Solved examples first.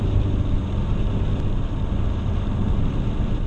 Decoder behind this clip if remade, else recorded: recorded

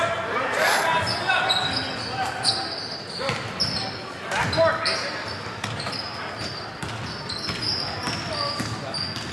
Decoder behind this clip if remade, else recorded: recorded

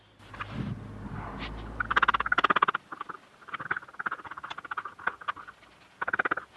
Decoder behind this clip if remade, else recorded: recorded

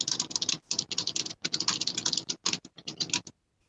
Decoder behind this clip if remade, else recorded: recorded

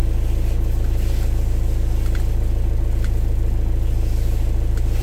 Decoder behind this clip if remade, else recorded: recorded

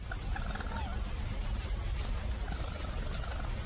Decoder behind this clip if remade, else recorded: recorded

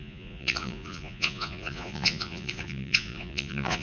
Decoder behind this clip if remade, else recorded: remade, vocoder, Vocos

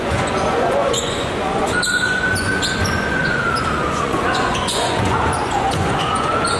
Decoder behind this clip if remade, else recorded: remade, vocoder, Vocos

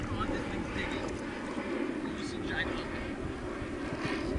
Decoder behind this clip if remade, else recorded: recorded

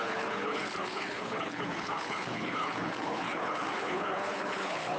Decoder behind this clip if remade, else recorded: remade, codec, HILCodec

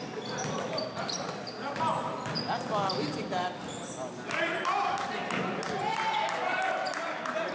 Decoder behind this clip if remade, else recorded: recorded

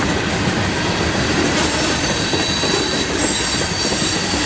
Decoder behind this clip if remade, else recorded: recorded